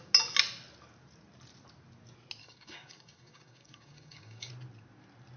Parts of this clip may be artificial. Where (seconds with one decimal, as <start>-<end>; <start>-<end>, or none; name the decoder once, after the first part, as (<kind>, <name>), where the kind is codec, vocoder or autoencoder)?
2.4-4.5 (codec, DAC)